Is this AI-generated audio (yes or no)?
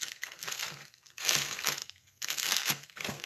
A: yes